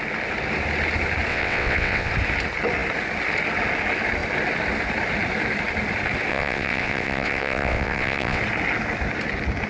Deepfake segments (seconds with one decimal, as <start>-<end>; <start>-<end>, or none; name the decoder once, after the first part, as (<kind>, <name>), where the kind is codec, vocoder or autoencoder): 1.3-2.1 (vocoder, WaveNeXt); 6.3-8.4